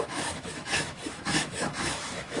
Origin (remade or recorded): remade